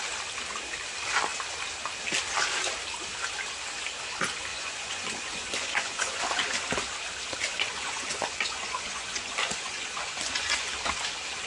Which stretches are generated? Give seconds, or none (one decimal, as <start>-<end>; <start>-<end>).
4.5-6.2; 7.5-10.7